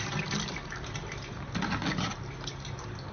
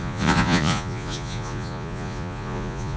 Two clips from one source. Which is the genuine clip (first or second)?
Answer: first